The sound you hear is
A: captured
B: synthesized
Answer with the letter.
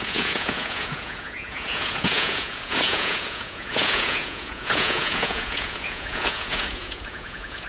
B